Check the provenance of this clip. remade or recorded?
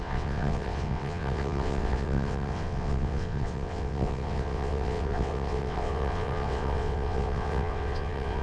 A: remade